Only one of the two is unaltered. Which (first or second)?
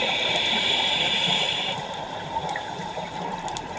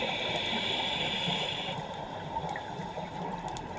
second